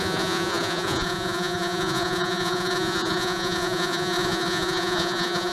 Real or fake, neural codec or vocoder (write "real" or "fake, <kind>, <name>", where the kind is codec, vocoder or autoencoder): fake, vocoder, Vocos